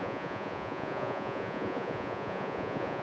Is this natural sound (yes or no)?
no